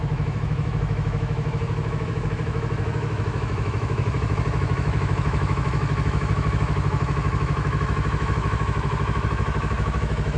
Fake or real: fake